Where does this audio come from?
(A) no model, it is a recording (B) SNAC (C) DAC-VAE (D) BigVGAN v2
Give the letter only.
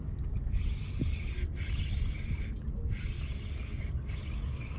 A